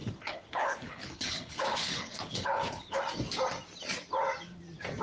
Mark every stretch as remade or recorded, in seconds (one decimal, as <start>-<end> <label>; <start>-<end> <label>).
0.0-3.0 remade; 3.0-5.0 recorded